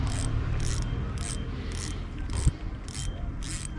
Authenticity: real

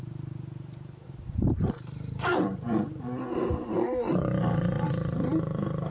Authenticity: fake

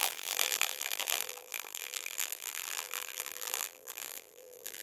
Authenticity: fake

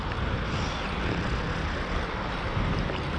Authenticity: real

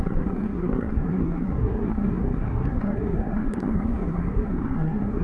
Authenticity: fake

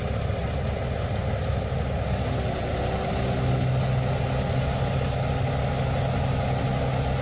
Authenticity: real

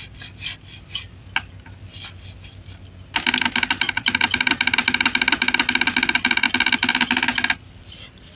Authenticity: real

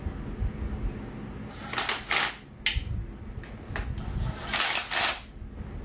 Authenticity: real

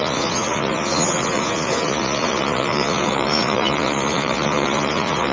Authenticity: fake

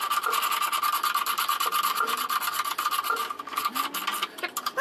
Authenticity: real